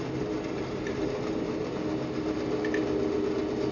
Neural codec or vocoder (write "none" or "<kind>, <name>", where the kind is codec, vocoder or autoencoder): none